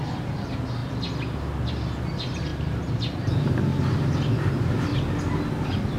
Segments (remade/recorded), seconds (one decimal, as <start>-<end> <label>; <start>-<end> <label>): 0.0-0.8 remade; 0.8-1.7 recorded; 1.7-4.9 remade; 4.9-6.0 recorded